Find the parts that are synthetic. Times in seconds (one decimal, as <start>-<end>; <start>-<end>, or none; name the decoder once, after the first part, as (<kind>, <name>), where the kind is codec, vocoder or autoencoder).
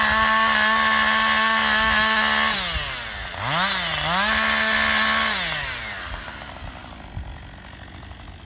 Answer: none